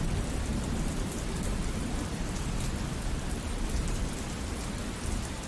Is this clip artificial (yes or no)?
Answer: no